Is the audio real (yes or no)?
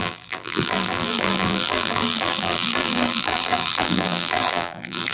no